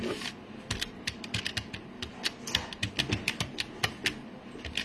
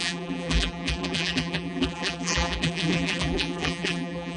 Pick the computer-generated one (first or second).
second